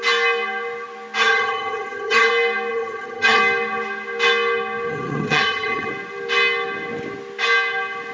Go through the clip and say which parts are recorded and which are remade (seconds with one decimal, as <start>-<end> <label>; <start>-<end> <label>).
0.0-1.2 recorded; 1.2-2.3 remade; 2.3-2.7 recorded; 2.7-3.4 remade; 3.4-4.9 recorded; 4.9-5.9 remade; 5.9-8.1 recorded